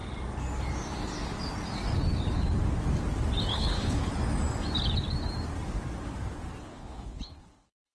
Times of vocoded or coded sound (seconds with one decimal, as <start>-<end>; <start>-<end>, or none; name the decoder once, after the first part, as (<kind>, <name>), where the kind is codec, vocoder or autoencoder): 3.5-4.1 (codec, HILCodec); 6.6-7.9